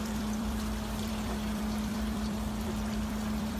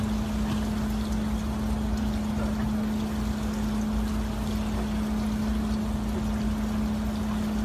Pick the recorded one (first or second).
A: second